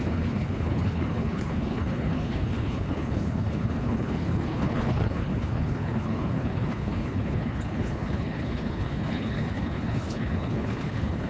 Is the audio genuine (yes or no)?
no